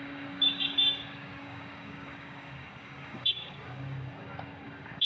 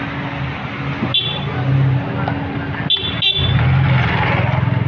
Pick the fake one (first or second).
first